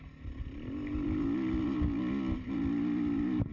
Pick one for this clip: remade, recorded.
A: recorded